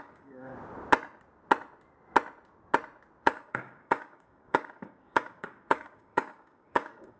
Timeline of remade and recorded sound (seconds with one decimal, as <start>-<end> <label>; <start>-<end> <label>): 0.0-0.5 remade; 0.5-3.2 recorded; 3.2-7.2 remade